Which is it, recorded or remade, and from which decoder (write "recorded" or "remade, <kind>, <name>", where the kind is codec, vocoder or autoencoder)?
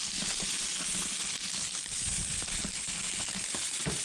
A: recorded